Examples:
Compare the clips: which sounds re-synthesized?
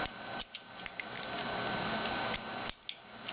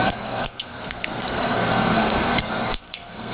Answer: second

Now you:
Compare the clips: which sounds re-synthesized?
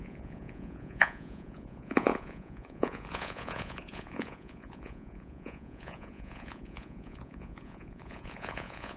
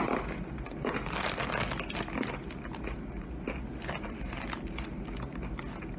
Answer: first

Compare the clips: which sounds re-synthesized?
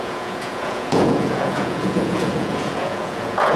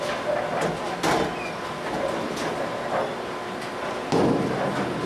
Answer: first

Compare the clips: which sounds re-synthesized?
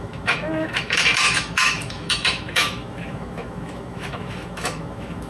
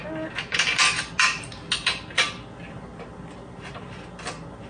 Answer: first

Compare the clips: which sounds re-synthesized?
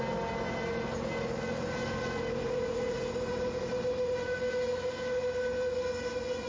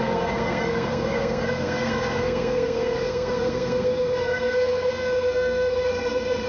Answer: second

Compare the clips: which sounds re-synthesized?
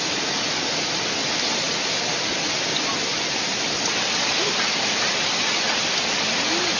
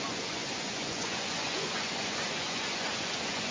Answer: second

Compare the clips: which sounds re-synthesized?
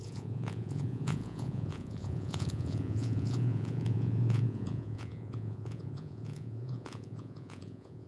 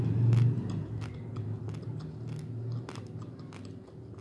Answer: first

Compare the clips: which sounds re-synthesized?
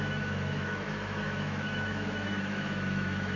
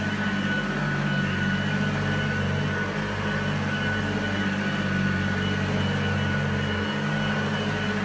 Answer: first